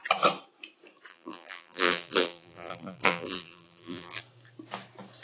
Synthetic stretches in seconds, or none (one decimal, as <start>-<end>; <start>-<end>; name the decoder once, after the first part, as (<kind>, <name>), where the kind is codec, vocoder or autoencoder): 1.1-4.2 (vocoder, BigVGAN v2)